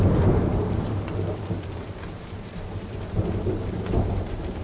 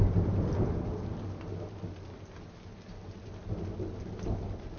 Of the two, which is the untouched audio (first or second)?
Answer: second